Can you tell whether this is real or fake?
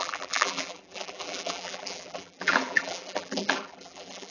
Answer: fake